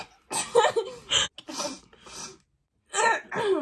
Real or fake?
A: real